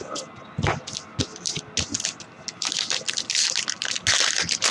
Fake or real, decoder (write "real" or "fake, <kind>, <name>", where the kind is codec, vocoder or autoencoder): real